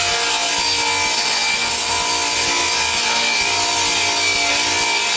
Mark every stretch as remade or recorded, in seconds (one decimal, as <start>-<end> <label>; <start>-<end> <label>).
0.0-5.2 recorded